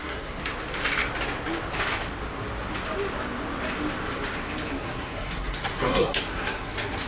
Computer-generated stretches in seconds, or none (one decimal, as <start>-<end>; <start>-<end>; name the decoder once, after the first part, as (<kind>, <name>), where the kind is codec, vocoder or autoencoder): 0.0-0.4 (codec, SNAC); 4.7-7.1